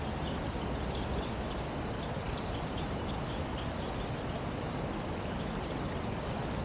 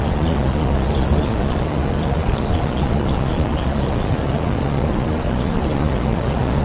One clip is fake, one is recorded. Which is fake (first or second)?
second